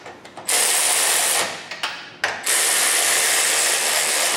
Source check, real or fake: real